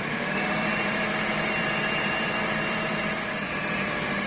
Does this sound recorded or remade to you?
remade